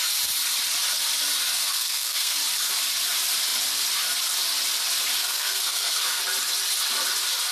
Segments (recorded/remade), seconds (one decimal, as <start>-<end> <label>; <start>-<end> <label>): 0.0-1.5 recorded; 1.5-2.4 remade; 2.4-5.2 recorded; 5.2-6.2 remade; 6.2-7.5 recorded